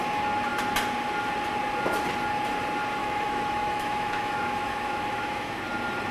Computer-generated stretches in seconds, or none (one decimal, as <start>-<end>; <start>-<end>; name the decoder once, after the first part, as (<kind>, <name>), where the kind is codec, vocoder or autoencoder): 3.0-5.6 (autoencoder, DAC-VAE)